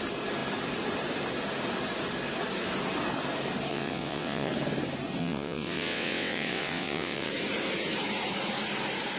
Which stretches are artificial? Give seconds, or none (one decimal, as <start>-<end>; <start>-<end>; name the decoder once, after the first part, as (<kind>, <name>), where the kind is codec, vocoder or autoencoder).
3.7-4.5 (vocoder, WaveNeXt); 5.2-7.3